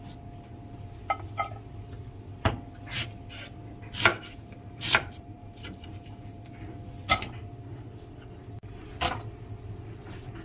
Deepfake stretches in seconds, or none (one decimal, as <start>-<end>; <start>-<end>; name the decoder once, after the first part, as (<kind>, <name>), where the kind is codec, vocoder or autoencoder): 4.1-6.5 (vocoder, BigVGAN v2)

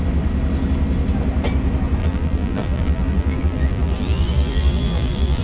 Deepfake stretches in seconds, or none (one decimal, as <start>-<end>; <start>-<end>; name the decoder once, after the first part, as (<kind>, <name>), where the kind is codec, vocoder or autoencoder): 2.0-5.4 (vocoder, BigVGAN v2)